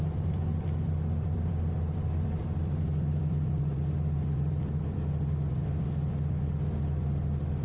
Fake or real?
fake